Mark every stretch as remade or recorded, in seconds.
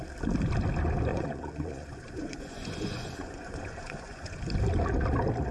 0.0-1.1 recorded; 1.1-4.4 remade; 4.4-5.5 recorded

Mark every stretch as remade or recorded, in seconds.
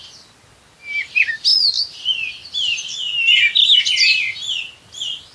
0.0-5.3 recorded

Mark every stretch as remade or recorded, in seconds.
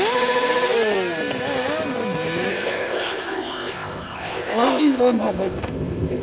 0.0-2.5 recorded; 2.5-6.2 remade